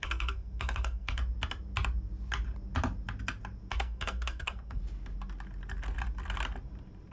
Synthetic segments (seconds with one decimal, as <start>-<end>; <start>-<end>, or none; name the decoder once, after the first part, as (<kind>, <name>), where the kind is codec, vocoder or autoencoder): 0.0-1.2 (codec, SNAC); 3.7-4.8